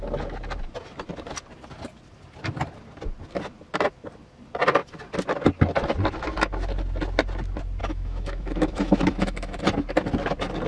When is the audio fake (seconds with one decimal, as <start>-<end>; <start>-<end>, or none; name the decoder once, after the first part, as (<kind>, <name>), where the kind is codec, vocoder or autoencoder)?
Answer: 7.8-9.6 (autoencoder, DAC-VAE)